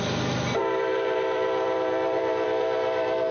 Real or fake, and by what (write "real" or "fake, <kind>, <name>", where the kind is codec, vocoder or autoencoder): fake, vocoder, BigVGAN v2